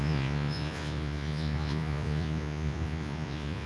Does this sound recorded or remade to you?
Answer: remade